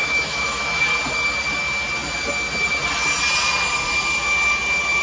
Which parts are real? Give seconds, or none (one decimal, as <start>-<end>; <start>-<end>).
0.8-5.0